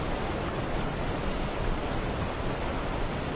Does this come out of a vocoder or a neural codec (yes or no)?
no